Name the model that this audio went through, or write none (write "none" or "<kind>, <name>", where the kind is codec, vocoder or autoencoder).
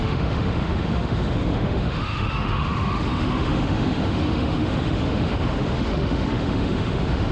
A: autoencoder, DAC-VAE